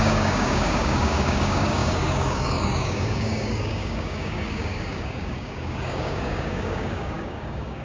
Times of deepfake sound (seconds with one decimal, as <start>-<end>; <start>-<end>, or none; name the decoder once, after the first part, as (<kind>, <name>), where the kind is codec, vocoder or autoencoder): 0.0-7.8 (codec, DAC)